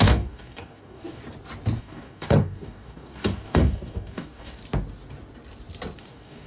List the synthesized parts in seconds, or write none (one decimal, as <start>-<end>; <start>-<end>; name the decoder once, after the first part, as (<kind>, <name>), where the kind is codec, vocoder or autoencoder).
0.0-1.2 (codec, DAC); 1.8-4.6; 6.0-6.5